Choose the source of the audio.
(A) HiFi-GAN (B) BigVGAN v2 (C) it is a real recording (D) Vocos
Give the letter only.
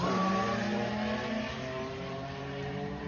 B